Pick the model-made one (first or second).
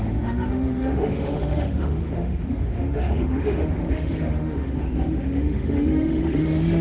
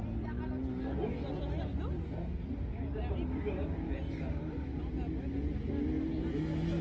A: first